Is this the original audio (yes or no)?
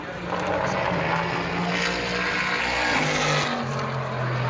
yes